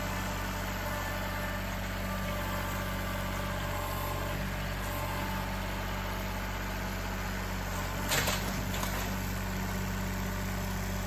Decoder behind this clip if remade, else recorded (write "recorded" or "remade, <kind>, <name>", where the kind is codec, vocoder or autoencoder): recorded